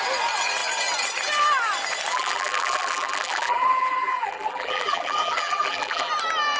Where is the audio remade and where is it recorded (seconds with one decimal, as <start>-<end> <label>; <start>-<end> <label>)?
0.0-2.1 recorded; 2.1-6.1 remade; 6.1-6.6 recorded

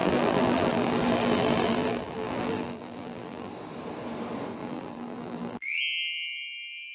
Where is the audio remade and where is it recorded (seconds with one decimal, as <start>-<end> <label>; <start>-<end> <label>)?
0.0-3.5 remade; 3.5-4.6 recorded; 4.6-5.8 remade; 5.8-6.9 recorded

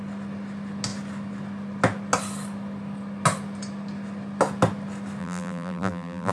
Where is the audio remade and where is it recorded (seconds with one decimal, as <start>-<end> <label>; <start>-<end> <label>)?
0.0-5.2 recorded; 5.2-6.3 remade

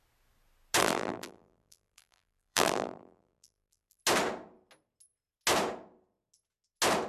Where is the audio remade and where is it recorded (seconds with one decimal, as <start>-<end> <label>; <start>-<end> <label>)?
0.0-0.8 recorded; 0.8-4.0 remade; 4.0-7.1 recorded

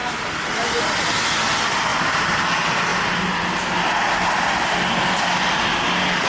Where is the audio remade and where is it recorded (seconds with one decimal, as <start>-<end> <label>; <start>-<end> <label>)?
0.0-1.9 recorded; 1.9-2.4 remade; 2.4-2.9 recorded; 2.9-3.7 remade; 3.7-6.3 recorded

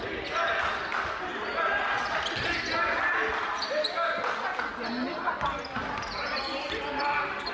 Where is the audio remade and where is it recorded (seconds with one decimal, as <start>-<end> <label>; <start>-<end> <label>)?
0.0-1.3 remade; 1.3-5.8 recorded; 5.8-7.5 remade

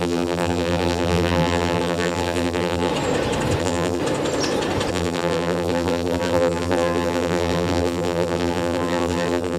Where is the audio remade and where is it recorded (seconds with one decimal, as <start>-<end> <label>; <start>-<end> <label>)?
0.0-2.9 remade; 2.9-3.6 recorded; 3.6-4.0 remade; 4.0-4.9 recorded; 4.9-9.6 remade